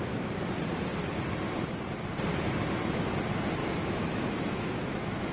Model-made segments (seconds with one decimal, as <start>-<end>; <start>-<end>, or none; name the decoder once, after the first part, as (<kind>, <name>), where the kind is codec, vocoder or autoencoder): 3.6-5.3 (autoencoder, DAC-VAE)